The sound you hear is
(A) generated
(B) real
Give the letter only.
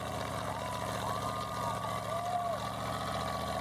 B